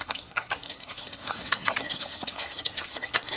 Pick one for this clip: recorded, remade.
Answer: remade